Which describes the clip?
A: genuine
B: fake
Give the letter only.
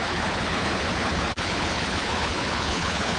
B